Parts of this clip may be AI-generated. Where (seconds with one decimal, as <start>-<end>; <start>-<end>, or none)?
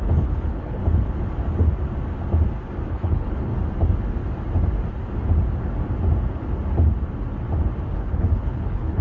0.0-0.8; 2.9-3.5; 7.9-9.0